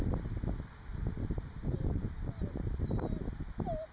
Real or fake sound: real